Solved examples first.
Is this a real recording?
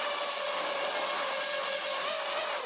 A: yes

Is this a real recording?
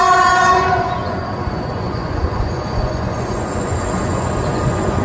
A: no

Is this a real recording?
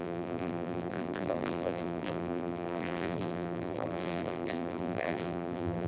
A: no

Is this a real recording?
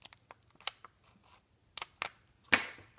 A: yes